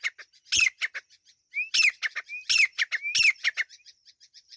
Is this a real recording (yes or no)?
yes